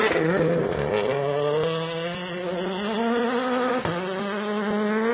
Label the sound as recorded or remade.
recorded